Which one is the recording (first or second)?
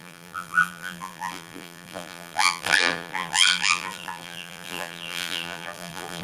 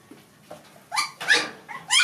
second